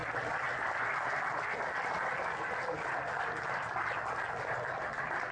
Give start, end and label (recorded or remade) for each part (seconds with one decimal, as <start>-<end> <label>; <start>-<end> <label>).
0.0-5.3 recorded